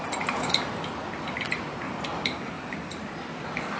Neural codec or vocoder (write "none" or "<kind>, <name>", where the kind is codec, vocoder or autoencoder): none